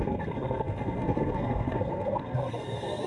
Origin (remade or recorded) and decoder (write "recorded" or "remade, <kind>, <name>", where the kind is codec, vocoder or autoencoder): remade, codec, SNAC